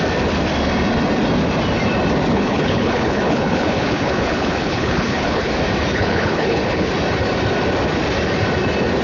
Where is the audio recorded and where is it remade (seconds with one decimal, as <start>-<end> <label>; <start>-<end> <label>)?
0.0-2.3 recorded; 2.3-5.5 remade; 5.5-5.9 recorded; 5.9-6.9 remade; 6.9-9.0 recorded